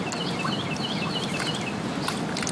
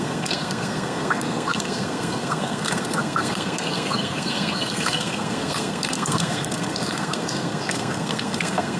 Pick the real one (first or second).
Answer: first